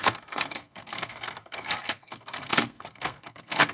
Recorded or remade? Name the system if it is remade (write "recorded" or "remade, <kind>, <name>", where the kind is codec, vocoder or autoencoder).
remade, codec, SNAC